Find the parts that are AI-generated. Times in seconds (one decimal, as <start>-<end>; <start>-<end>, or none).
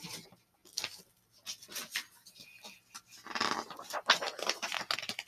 none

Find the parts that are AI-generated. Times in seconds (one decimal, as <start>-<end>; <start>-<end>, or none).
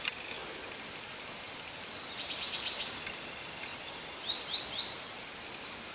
3.7-4.4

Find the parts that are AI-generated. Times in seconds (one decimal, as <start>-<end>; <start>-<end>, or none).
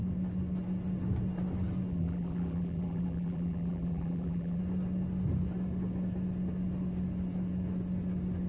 1.9-4.6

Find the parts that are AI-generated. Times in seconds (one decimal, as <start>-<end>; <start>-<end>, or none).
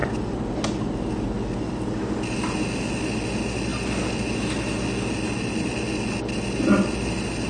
none